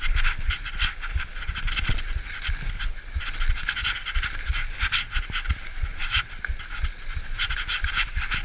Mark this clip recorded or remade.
recorded